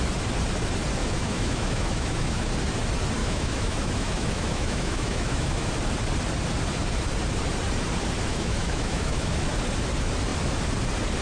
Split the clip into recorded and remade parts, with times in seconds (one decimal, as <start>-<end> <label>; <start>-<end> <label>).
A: 0.0-1.0 recorded; 1.0-2.5 remade; 2.5-3.2 recorded; 3.2-5.7 remade; 5.7-8.3 recorded; 8.3-9.3 remade; 9.3-11.2 recorded